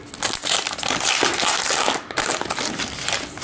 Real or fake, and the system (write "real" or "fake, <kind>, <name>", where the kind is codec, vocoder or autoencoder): real